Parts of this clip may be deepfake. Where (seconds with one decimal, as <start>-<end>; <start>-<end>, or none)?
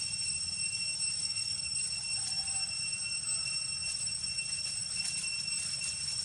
1.2-1.8